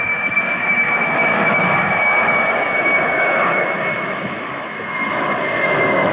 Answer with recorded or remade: remade